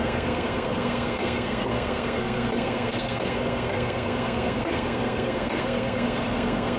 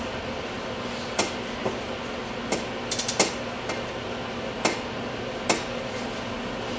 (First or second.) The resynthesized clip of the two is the first